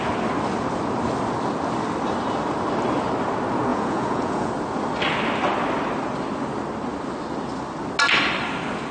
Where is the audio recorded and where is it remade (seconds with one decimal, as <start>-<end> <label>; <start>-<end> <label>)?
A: 0.0-3.7 recorded; 3.7-4.5 remade; 4.5-8.9 recorded